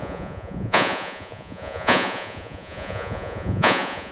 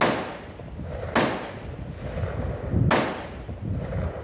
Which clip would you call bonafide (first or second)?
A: second